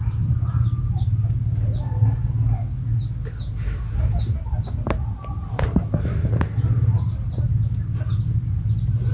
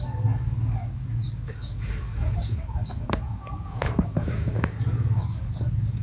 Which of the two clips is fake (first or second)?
second